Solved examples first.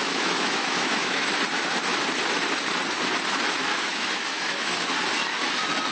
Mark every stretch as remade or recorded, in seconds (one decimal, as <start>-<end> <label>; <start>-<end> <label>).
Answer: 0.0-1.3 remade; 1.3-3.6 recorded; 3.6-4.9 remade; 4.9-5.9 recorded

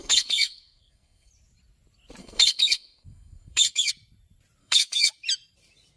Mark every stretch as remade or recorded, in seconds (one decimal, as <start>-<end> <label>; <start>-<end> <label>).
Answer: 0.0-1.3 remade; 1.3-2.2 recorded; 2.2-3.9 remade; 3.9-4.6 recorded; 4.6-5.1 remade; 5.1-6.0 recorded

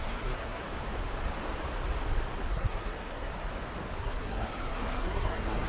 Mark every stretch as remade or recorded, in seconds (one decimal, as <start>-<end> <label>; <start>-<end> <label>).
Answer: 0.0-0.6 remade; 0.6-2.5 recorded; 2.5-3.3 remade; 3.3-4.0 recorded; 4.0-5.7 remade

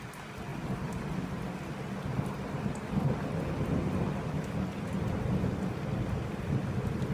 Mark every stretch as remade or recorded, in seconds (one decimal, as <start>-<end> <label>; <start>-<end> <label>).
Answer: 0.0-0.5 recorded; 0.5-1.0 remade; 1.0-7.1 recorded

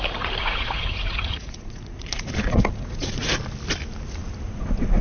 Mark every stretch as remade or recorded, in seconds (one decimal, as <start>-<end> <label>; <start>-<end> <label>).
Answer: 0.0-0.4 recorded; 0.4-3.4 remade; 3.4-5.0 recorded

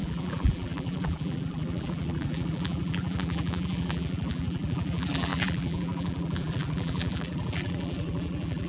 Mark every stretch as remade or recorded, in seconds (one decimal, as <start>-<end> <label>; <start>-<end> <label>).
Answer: 0.0-8.7 remade

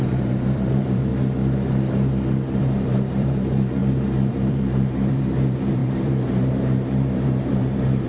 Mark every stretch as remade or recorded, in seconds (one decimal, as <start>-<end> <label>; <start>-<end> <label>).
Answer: 0.0-1.1 remade; 1.1-2.6 recorded; 2.6-8.1 remade